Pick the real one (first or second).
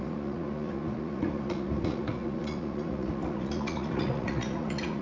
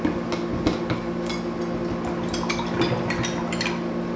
second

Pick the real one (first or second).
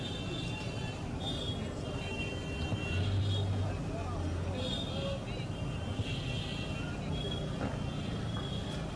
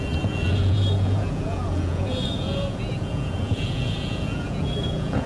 first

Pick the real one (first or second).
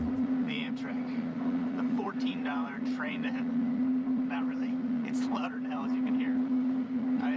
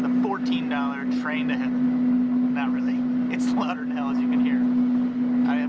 second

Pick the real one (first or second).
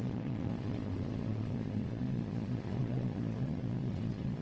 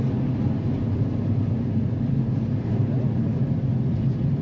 second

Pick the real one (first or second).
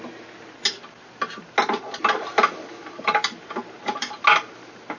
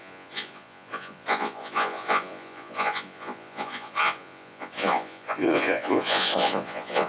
first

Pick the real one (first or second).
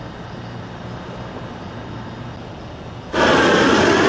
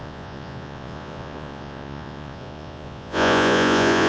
first